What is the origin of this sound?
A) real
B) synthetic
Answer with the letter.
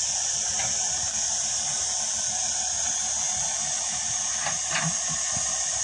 A